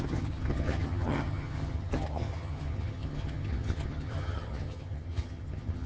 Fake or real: fake